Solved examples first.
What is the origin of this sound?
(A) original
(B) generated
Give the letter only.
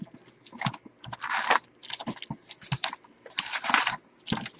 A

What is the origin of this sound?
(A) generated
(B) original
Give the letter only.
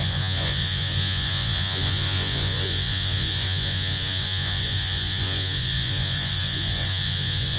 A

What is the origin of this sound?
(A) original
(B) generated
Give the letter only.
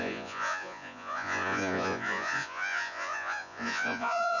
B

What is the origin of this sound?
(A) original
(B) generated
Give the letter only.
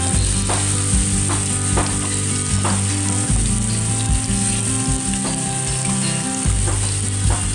A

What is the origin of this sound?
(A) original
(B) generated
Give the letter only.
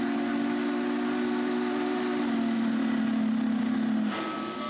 A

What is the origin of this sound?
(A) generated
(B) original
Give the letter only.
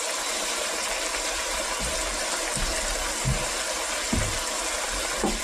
B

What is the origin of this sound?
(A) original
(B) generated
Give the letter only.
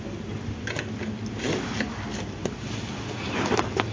A